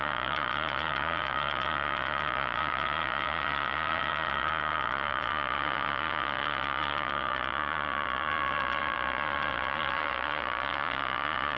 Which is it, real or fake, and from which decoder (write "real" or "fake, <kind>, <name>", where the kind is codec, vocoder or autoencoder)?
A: fake, vocoder, Vocos